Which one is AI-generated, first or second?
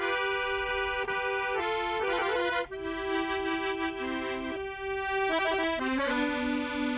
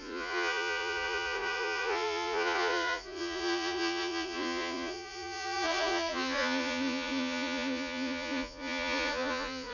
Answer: second